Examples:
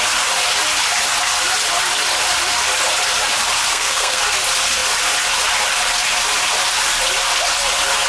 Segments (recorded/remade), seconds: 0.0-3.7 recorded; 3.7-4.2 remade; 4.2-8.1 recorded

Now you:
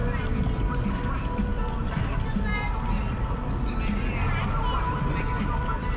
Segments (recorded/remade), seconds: 0.0-6.0 recorded

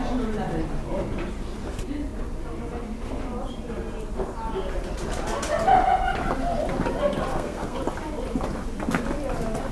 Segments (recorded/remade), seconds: 0.0-7.3 recorded; 7.3-7.8 remade; 7.8-9.7 recorded

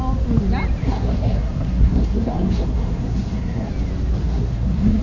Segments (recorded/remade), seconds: 0.0-0.8 recorded; 0.8-3.7 remade; 3.7-4.2 recorded; 4.2-5.0 remade

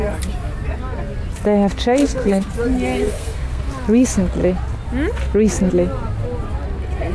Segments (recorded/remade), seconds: 0.0-2.0 recorded; 2.0-2.5 remade; 2.5-3.0 recorded; 3.0-3.6 remade; 3.6-7.1 recorded

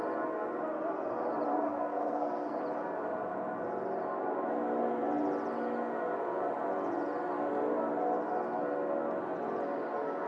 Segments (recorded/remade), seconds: 0.0-1.5 recorded; 1.5-2.6 remade; 2.6-10.3 recorded